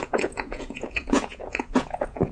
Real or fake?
fake